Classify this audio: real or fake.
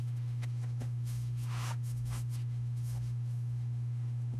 fake